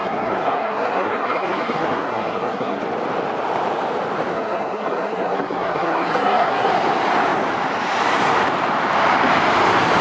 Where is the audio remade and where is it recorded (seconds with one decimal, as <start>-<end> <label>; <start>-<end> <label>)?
0.0-2.8 remade; 2.8-4.3 recorded; 4.3-6.7 remade; 6.7-10.0 recorded